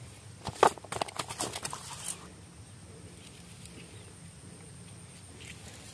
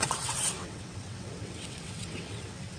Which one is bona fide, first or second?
first